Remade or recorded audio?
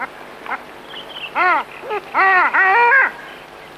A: recorded